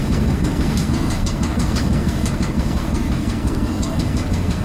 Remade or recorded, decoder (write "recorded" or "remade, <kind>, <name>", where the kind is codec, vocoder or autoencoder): remade, codec, SNAC